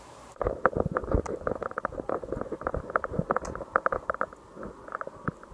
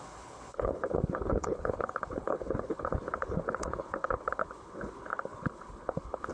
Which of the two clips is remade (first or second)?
second